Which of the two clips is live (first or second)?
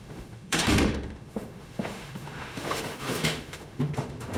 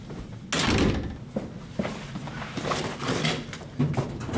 second